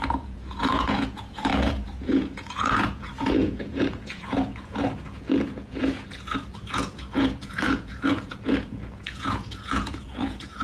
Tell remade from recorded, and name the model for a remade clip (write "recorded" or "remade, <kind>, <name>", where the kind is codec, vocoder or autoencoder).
remade, vocoder, Vocos